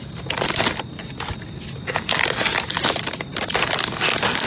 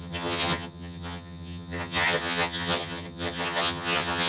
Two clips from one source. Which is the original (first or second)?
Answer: first